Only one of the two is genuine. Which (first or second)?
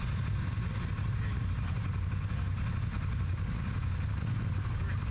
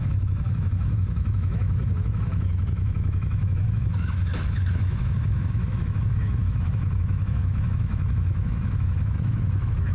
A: first